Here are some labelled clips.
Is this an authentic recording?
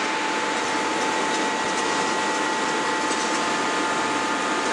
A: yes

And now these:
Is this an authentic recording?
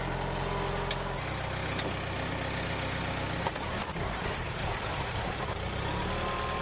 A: yes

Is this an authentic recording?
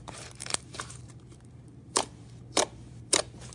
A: no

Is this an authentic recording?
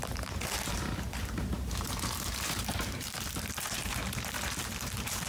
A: no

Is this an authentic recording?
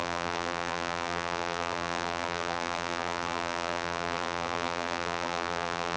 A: no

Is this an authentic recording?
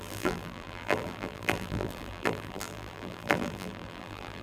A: no